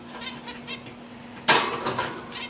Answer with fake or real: real